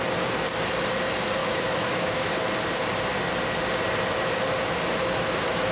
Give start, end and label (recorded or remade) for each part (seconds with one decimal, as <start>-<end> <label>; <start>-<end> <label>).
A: 0.0-1.4 recorded; 1.4-2.3 remade; 2.3-5.7 recorded